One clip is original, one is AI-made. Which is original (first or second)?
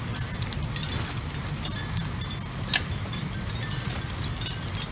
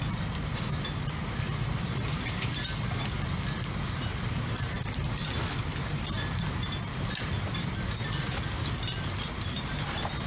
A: first